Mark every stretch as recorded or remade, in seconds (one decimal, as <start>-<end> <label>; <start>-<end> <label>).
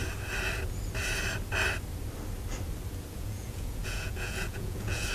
0.0-3.1 recorded; 3.1-5.1 remade